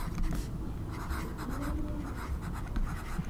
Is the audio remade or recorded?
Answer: recorded